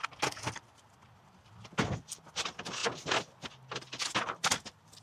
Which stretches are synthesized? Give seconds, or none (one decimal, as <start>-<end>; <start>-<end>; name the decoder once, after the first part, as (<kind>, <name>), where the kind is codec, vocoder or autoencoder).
none